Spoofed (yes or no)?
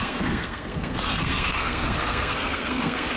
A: yes